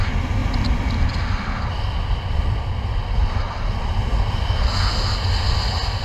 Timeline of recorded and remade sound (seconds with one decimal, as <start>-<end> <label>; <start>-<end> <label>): 0.0-6.0 recorded